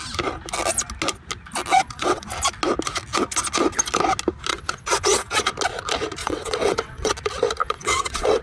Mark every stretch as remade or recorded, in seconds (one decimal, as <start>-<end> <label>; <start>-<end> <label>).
0.0-1.7 recorded; 1.7-2.3 remade; 2.3-4.5 recorded; 4.5-5.5 remade; 5.5-6.2 recorded; 6.2-7.1 remade; 7.1-7.6 recorded; 7.6-8.4 remade